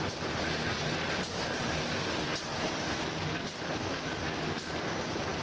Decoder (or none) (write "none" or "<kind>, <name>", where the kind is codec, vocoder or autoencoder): none